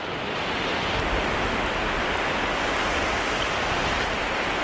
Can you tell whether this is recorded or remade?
recorded